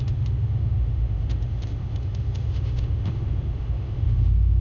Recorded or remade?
remade